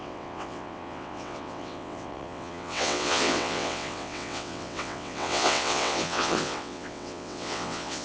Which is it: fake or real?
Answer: fake